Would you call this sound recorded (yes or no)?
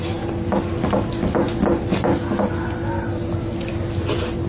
yes